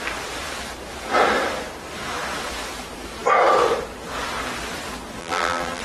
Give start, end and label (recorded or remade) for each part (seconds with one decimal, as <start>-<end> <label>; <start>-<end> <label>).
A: 0.0-5.2 recorded; 5.2-5.8 remade